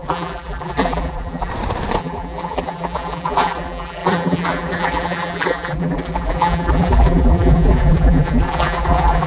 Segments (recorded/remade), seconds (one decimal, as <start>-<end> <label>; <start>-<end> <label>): 0.0-1.5 remade; 1.5-2.0 recorded; 2.0-9.3 remade